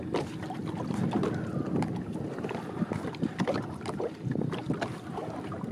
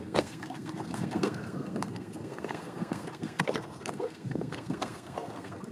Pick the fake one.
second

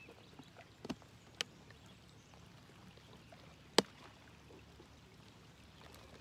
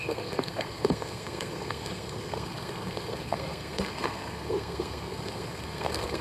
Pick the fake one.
second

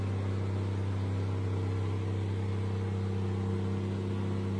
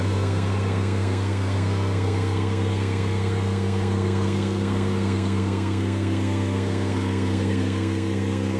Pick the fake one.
second